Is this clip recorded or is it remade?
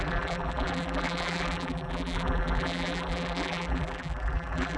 remade